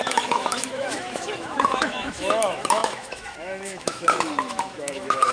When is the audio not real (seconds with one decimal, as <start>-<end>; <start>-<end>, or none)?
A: 0.0-5.3